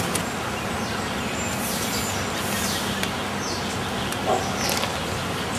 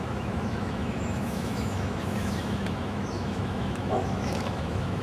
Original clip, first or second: first